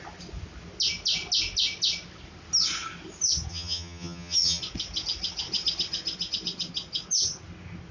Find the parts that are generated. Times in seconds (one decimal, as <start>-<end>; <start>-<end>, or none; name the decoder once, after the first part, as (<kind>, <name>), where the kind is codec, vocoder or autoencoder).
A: 3.5-4.6 (vocoder, HiFi-GAN)